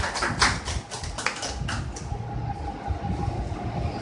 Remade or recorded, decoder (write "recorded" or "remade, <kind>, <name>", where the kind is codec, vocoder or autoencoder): recorded